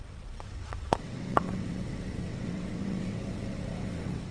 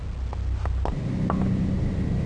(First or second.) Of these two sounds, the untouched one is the second